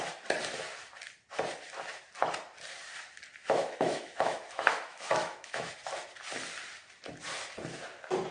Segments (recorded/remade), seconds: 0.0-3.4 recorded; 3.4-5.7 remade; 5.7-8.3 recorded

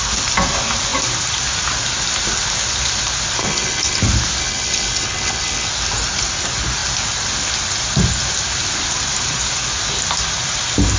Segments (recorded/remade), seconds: 0.0-3.4 recorded; 3.4-4.0 remade; 4.0-4.4 recorded; 4.4-5.7 remade; 5.7-11.0 recorded

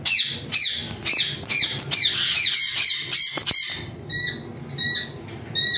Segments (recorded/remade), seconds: 0.0-5.8 recorded